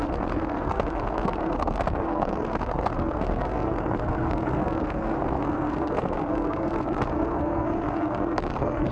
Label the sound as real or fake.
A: fake